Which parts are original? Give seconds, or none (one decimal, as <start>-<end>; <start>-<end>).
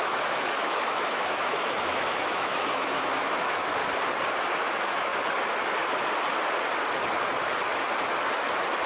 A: 3.8-4.6; 5.1-8.9